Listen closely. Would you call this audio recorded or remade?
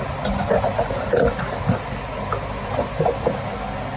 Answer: recorded